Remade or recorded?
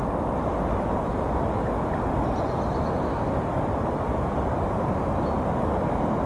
recorded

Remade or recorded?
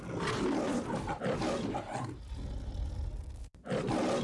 recorded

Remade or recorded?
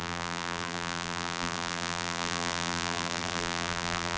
remade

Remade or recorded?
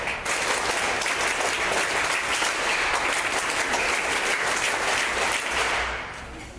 recorded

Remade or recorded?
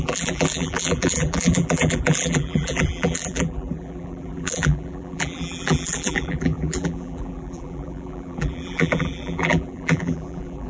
remade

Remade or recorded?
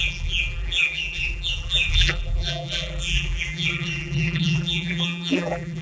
remade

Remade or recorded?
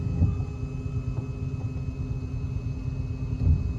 recorded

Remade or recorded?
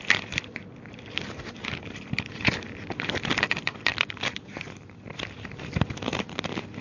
remade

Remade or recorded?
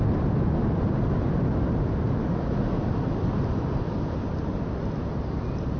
recorded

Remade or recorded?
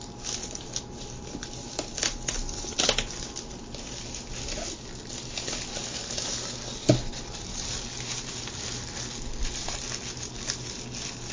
recorded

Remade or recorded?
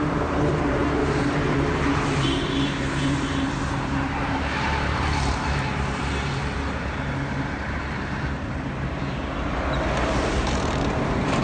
remade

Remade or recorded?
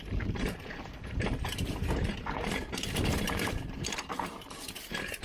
remade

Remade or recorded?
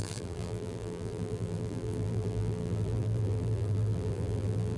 remade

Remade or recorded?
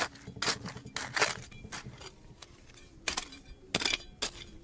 recorded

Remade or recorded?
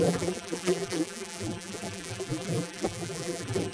remade